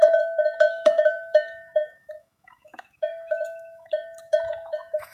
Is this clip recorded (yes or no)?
no